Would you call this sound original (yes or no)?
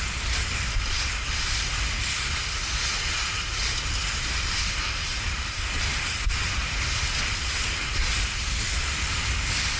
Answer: yes